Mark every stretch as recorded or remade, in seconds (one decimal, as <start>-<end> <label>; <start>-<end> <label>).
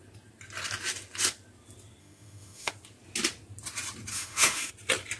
0.0-2.0 recorded; 2.0-2.7 remade; 2.7-4.1 recorded; 4.1-4.7 remade; 4.7-5.2 recorded